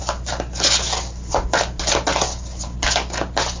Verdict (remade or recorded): recorded